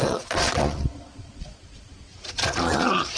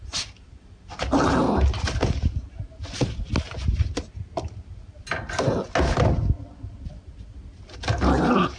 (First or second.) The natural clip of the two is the second